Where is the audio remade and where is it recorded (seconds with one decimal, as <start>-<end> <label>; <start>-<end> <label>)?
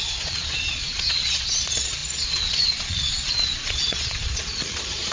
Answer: 0.0-5.1 remade